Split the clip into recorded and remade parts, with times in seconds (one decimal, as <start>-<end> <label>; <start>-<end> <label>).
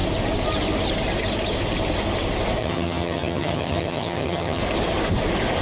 0.0-2.6 recorded; 2.6-4.6 remade; 4.6-5.6 recorded